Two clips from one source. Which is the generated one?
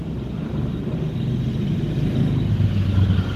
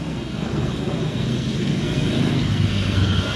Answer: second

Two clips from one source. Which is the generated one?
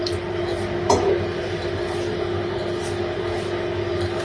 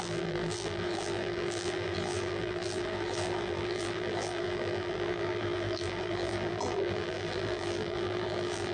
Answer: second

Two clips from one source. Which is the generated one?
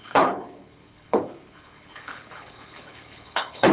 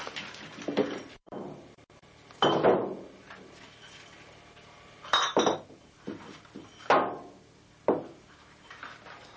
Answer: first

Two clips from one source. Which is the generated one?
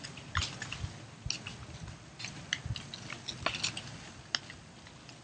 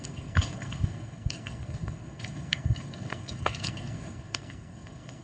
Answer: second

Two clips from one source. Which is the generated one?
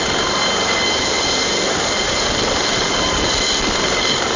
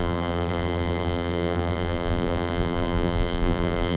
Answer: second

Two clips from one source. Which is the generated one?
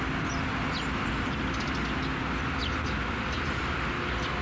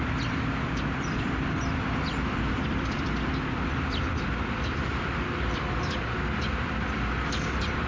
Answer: second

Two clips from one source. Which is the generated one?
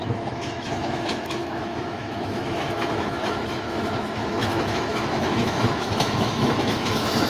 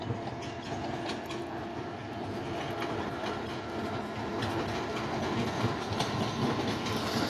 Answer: first